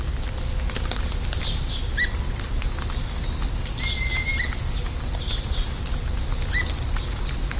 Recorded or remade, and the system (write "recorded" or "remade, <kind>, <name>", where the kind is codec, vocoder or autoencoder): recorded